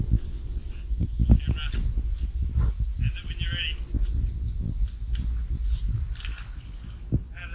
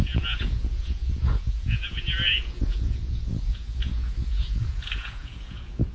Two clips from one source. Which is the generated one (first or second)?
second